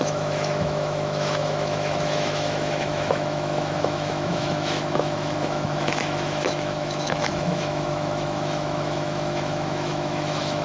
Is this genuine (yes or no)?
no